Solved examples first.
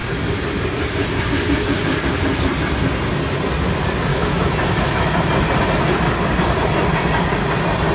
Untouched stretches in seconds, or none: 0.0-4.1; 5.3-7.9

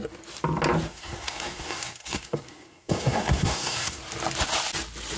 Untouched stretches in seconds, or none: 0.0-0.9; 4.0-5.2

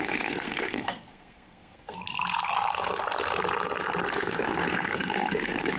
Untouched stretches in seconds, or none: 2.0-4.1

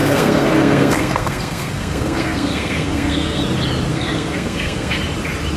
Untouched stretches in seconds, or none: 3.4-3.9; 5.0-5.6